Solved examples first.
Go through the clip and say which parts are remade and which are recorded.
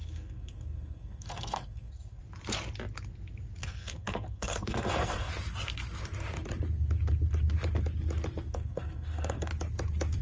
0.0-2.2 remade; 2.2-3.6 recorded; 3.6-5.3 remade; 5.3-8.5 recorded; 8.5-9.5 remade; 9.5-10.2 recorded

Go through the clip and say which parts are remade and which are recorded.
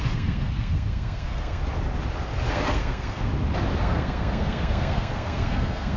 0.0-1.6 remade; 1.6-2.5 recorded; 2.5-3.3 remade; 3.3-3.8 recorded; 3.8-6.0 remade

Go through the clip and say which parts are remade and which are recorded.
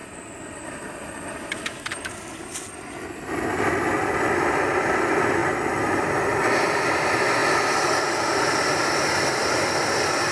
0.0-10.3 recorded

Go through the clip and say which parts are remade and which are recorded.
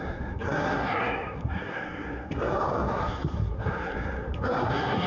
0.0-5.1 remade